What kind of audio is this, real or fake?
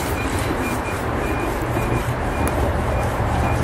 fake